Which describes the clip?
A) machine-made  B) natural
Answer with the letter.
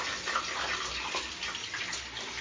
B